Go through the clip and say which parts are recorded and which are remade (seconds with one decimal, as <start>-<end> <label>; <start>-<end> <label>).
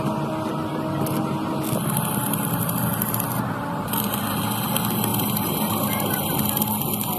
0.0-5.1 recorded; 5.1-6.3 remade; 6.3-7.2 recorded